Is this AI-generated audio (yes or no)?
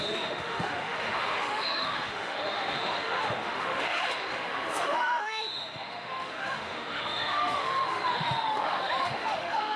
yes